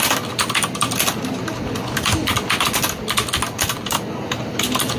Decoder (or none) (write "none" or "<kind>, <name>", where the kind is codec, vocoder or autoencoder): none